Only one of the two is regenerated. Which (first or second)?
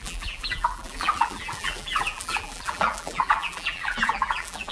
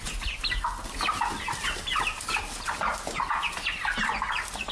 first